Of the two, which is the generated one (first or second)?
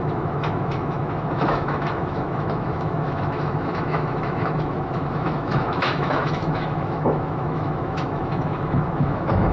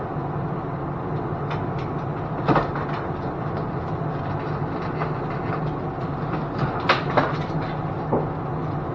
first